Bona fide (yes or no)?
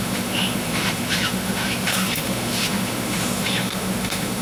no